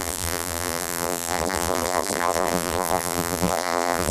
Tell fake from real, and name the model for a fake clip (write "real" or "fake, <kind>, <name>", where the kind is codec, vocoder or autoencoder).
fake, vocoder, BigVGAN v2